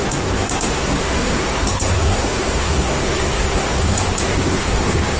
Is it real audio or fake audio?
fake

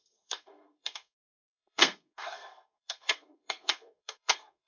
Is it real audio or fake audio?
fake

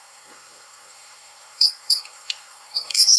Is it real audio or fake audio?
fake